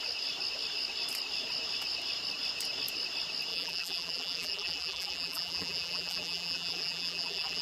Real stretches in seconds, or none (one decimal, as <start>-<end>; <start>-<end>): 0.0-3.5